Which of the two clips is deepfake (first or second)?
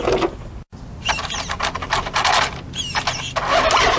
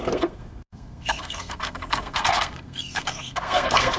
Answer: second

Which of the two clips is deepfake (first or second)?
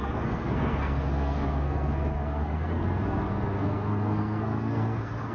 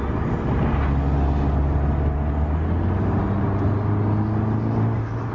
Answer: first